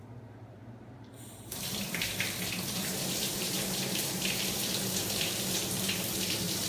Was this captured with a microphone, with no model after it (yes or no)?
no